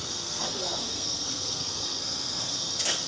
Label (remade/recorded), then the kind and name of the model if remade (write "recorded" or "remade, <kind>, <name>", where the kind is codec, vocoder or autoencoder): remade, codec, SNAC